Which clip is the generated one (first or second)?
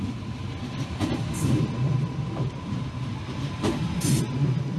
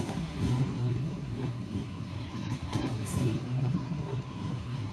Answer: second